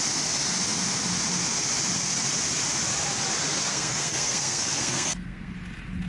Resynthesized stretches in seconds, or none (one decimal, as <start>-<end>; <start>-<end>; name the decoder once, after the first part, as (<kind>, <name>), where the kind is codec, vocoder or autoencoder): 3.7-5.5 (codec, SNAC)

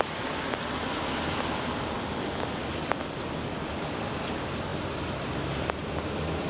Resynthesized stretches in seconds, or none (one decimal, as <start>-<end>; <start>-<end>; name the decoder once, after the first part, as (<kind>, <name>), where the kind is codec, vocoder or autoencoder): none

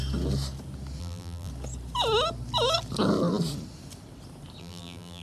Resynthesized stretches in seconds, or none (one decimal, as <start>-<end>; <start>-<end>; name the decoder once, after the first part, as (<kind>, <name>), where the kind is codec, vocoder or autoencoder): 1.0-1.5 (vocoder, BigVGAN v2); 4.6-5.2

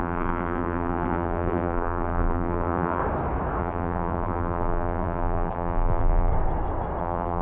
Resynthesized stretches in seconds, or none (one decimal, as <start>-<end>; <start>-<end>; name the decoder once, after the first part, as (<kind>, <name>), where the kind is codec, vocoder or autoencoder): 0.0-3.0 (vocoder, BigVGAN v2); 3.6-6.3; 7.0-7.4

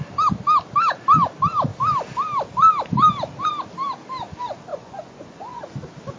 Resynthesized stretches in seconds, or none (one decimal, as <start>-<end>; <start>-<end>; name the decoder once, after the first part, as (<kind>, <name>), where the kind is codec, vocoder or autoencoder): 4.7-5.6 (vocoder, Vocos)